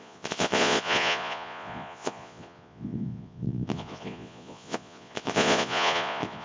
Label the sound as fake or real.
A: fake